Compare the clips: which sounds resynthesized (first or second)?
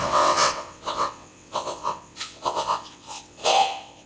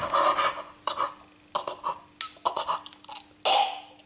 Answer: first